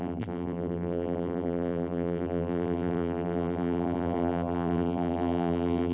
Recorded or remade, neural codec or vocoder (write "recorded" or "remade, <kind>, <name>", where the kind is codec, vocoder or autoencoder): remade, vocoder, BigVGAN v2